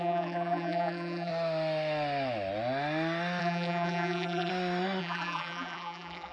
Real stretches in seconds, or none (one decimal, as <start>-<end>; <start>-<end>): 1.3-3.4; 4.5-5.0